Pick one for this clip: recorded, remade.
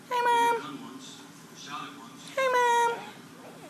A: recorded